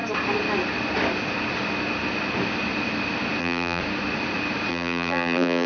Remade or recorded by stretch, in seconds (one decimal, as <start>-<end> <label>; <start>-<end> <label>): 0.0-3.4 recorded; 3.4-3.8 remade; 3.8-4.7 recorded; 4.7-5.7 remade